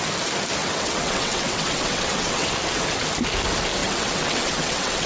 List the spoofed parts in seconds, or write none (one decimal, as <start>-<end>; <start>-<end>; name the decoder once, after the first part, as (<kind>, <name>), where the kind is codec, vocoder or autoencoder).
0.6-2.5 (vocoder, WaveNeXt); 3.8-5.1